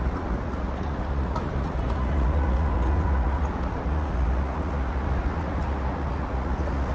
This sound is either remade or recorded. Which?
remade